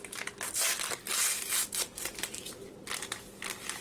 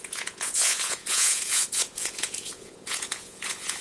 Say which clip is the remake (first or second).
second